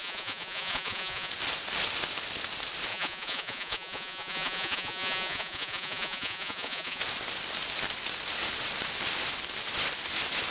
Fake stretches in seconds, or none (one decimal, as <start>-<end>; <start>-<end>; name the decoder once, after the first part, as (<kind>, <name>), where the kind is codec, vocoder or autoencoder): 0.0-1.3 (vocoder, Vocos); 2.9-7.0

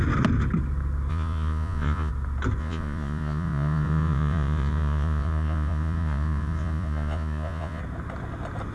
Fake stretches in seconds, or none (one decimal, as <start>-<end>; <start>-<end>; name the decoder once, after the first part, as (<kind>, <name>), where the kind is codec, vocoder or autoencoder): 1.1-2.1 (vocoder, Vocos); 2.6-7.8

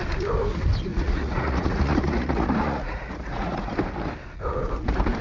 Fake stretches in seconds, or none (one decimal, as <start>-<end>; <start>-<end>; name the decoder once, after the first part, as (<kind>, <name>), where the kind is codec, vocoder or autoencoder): 0.9-3.7 (vocoder, Vocos)

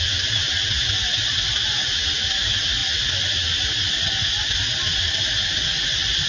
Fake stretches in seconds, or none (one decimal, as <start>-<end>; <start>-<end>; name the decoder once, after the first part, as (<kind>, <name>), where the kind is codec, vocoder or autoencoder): none

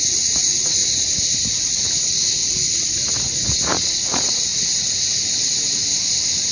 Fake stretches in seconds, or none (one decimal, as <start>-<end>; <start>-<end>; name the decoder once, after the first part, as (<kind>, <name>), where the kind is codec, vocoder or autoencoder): 0.0-0.8 (vocoder, Vocos); 2.0-2.4; 3.2-4.5

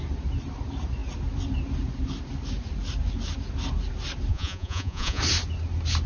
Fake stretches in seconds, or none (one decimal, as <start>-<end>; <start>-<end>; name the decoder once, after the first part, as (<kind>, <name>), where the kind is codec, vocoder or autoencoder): 4.3-5.2 (vocoder, Vocos)